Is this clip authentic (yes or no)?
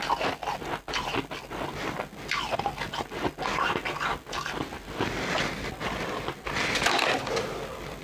yes